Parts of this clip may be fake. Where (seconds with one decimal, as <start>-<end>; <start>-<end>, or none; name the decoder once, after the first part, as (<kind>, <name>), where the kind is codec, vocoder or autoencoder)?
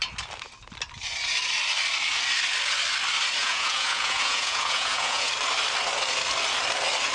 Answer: 3.4-5.3 (vocoder, Vocos)